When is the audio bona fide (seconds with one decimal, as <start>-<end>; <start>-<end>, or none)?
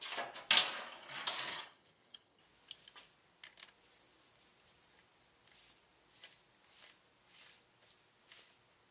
0.0-1.5; 2.4-8.9